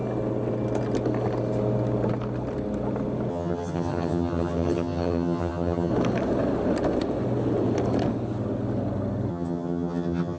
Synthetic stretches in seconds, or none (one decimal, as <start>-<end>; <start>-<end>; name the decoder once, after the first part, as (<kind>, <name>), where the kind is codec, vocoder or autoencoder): 3.3-5.9 (vocoder, HiFi-GAN); 9.3-10.4

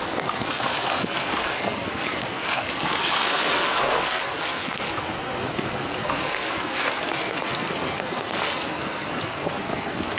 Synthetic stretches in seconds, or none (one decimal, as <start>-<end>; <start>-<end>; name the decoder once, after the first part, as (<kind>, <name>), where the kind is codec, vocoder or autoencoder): 0.0-10.2 (codec, SNAC)

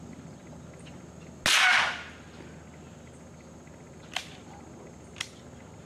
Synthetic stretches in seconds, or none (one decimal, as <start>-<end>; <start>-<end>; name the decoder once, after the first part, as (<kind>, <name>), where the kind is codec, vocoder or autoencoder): none

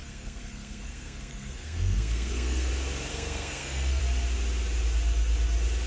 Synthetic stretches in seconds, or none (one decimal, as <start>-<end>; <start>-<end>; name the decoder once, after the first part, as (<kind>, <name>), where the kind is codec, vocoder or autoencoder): 0.0-2.7 (codec, SNAC); 3.1-4.0

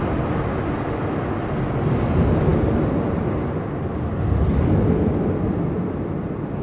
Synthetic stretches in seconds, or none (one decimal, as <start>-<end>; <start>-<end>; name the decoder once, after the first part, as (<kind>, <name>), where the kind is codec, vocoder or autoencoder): none